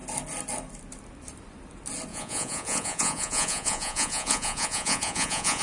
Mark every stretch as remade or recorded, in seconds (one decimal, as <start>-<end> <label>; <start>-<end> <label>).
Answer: 0.0-2.1 recorded; 2.1-5.6 remade